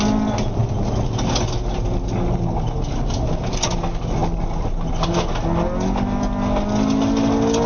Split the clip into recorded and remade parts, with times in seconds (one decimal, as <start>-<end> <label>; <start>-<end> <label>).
0.0-7.7 recorded